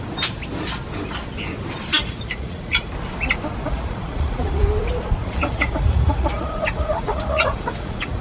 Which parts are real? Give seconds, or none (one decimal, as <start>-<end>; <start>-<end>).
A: 0.0-2.0; 2.9-3.6; 4.6-5.2